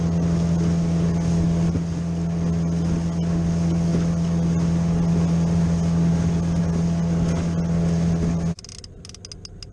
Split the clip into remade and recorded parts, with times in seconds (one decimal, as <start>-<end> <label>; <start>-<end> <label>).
0.0-9.7 recorded